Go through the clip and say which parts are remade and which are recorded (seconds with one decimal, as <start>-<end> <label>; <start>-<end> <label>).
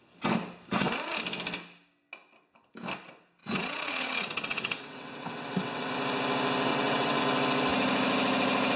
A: 0.0-3.4 recorded; 3.4-5.9 remade; 5.9-6.7 recorded; 6.7-7.2 remade; 7.2-8.8 recorded